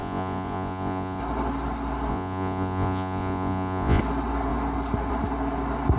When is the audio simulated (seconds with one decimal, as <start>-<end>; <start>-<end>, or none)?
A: 0.0-1.2; 2.1-4.0